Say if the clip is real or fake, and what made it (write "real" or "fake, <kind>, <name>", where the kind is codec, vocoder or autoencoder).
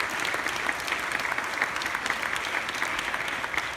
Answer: real